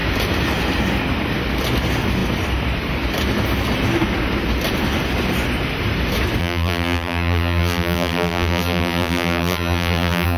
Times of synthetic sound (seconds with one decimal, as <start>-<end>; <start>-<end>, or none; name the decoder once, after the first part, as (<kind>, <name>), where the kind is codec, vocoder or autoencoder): 6.4-10.4 (vocoder, BigVGAN v2)